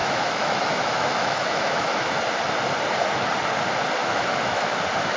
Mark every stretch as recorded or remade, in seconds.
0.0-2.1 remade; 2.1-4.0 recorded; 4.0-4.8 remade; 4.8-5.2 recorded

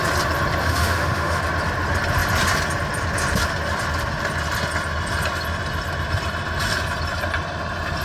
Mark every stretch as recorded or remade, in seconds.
0.0-0.6 recorded; 0.6-1.4 remade; 1.4-8.0 recorded

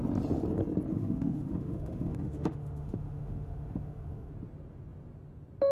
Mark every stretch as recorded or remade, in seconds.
0.0-0.9 recorded; 0.9-4.3 remade; 4.3-5.7 recorded

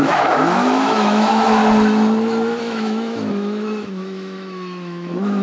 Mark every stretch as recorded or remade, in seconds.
0.0-1.6 remade; 1.6-2.6 recorded; 2.6-5.4 remade

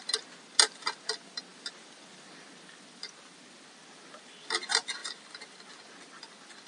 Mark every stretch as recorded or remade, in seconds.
0.0-6.7 recorded

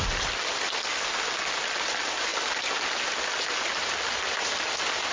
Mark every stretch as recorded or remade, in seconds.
0.0-5.1 recorded

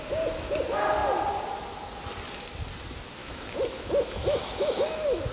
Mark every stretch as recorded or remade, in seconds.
0.0-3.2 recorded; 3.2-5.3 remade

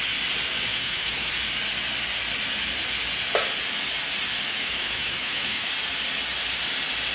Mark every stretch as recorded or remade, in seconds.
0.0-0.7 recorded; 0.7-1.4 remade; 1.4-4.5 recorded; 4.5-5.7 remade; 5.7-7.1 recorded